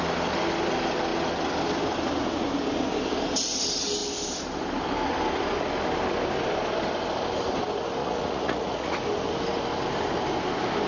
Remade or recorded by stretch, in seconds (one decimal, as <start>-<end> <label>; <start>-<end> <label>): 0.0-8.0 recorded; 8.0-9.0 remade; 9.0-10.9 recorded